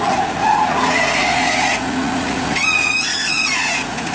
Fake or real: fake